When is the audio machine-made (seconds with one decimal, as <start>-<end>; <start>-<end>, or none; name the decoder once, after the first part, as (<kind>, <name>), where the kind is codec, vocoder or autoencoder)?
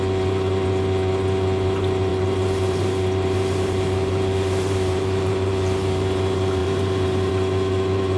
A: 2.1-5.3 (vocoder, BigVGAN v2); 6.6-7.3